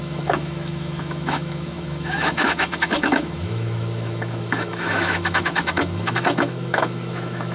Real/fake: fake